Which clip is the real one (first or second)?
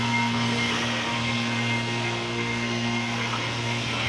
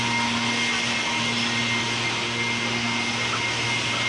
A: second